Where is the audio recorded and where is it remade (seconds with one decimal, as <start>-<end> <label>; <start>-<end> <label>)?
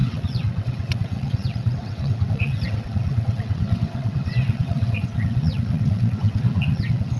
0.0-7.2 remade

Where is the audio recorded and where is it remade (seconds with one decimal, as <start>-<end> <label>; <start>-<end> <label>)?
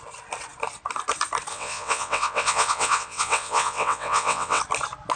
0.0-1.5 recorded; 1.5-4.6 remade; 4.6-5.2 recorded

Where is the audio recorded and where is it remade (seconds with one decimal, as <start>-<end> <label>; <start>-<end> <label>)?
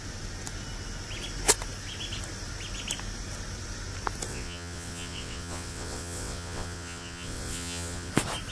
0.0-4.3 recorded; 4.3-8.1 remade; 8.1-8.5 recorded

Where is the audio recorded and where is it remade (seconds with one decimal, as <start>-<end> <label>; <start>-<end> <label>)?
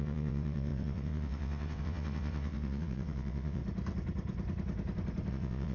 0.0-3.6 remade; 3.6-5.3 recorded; 5.3-5.7 remade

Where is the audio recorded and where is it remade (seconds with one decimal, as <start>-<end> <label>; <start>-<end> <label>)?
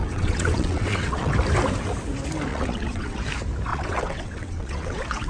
0.0-1.3 remade; 1.3-2.5 recorded; 2.5-3.2 remade; 3.2-3.7 recorded; 3.7-5.3 remade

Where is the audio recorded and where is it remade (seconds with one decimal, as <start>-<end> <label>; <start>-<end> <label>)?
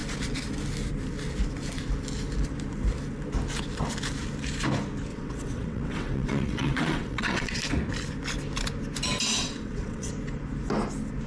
0.0-5.1 recorded; 5.1-7.6 remade; 7.6-9.4 recorded; 9.4-10.1 remade; 10.1-11.3 recorded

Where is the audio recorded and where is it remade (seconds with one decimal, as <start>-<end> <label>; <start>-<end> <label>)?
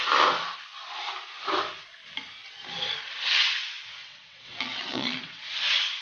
0.0-4.0 recorded; 4.0-5.4 remade; 5.4-6.0 recorded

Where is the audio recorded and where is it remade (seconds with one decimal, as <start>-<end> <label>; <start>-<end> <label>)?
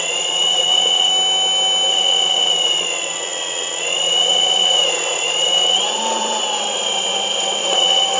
0.0-1.1 remade; 1.1-1.9 recorded; 1.9-8.2 remade